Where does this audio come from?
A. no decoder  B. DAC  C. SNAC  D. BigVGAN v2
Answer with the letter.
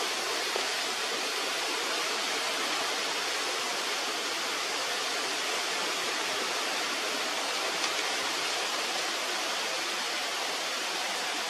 A